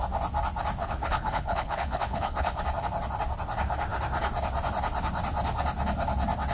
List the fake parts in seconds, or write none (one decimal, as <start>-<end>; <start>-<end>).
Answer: 0.8-2.6